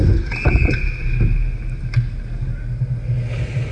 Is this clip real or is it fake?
real